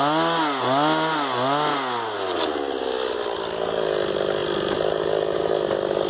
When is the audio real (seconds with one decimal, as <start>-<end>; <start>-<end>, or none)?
0.0-6.1